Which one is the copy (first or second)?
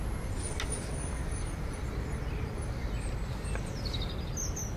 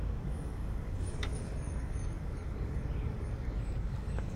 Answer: second